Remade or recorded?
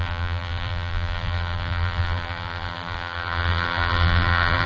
remade